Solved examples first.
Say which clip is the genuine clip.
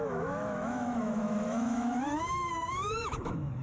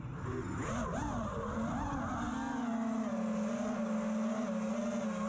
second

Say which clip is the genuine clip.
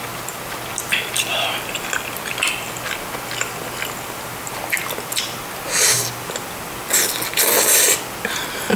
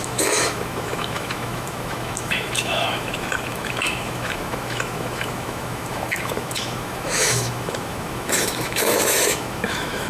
first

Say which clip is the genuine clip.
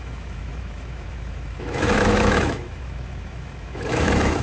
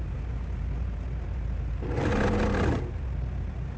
second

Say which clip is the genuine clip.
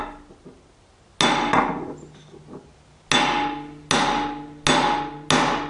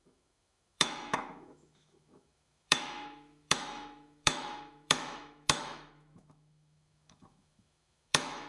first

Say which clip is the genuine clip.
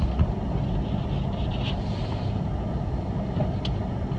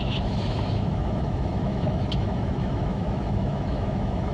first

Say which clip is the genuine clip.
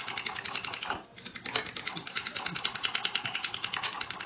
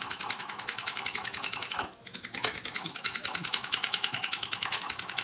first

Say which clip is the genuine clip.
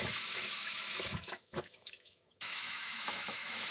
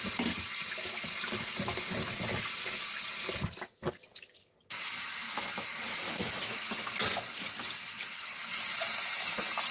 second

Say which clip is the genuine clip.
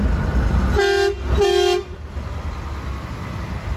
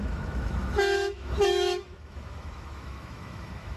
first